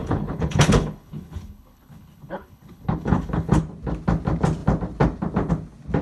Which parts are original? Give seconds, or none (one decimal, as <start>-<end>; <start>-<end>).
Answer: 3.6-6.0